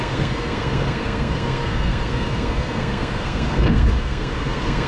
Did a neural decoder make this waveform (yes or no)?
yes